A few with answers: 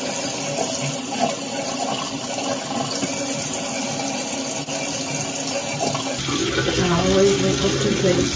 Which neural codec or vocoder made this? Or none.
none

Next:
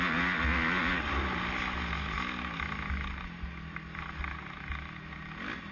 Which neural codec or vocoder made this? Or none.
none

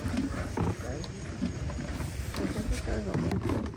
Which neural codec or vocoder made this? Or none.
vocoder, BigVGAN v2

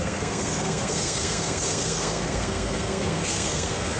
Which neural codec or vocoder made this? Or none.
codec, SNAC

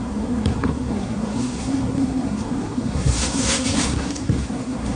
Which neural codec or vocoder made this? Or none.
codec, SNAC